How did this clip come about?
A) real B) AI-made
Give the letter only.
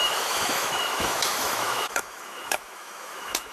B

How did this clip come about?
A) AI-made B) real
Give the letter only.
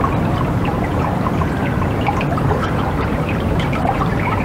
A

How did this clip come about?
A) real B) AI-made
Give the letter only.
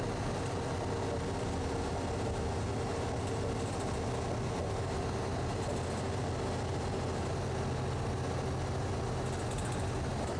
A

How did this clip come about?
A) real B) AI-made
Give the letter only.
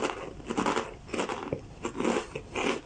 A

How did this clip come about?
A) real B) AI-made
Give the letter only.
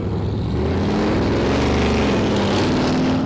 A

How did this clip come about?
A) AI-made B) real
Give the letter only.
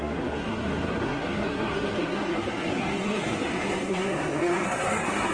A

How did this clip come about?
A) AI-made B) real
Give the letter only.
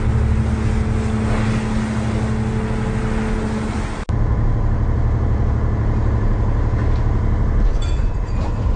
B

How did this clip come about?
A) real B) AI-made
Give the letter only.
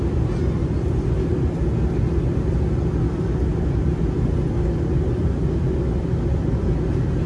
A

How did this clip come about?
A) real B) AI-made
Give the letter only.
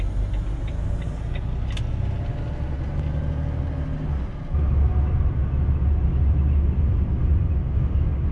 A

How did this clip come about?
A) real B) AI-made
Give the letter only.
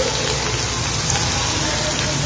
A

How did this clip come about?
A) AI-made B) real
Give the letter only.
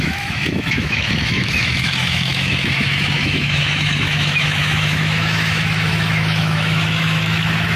A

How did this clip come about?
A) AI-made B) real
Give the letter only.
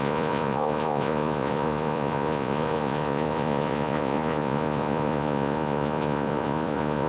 A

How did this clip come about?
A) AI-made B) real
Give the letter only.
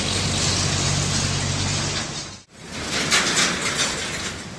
B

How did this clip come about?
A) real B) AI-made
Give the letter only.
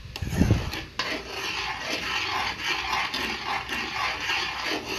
A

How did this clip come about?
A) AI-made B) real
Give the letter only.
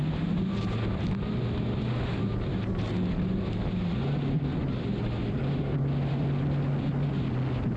B